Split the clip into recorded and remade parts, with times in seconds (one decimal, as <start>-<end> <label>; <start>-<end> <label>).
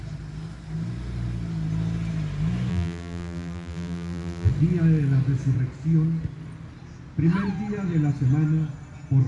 0.0-2.7 recorded; 2.7-4.5 remade; 4.5-9.3 recorded